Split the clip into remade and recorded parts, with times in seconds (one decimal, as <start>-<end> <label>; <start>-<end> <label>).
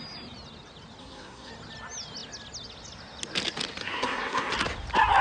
0.0-1.0 recorded; 1.0-1.5 remade; 1.5-3.8 recorded; 3.8-4.5 remade; 4.5-5.2 recorded